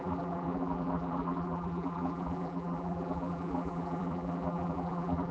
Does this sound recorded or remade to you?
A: remade